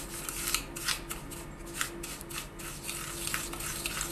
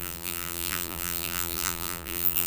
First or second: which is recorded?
first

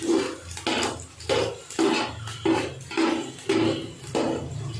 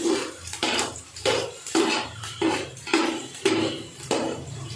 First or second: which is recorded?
first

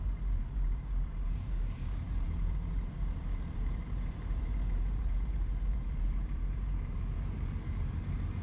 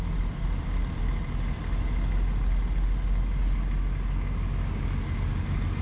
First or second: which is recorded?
second